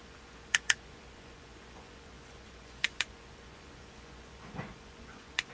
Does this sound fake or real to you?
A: fake